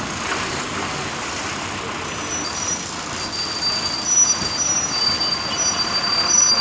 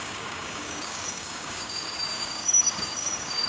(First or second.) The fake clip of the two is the second